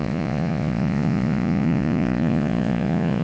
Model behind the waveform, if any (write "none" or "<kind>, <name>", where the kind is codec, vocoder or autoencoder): vocoder, Vocos